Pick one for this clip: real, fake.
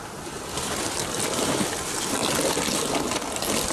real